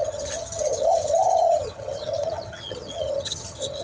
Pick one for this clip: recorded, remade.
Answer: remade